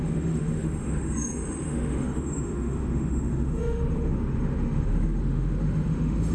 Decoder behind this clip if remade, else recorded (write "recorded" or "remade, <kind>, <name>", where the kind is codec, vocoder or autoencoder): remade, autoencoder, DAC-VAE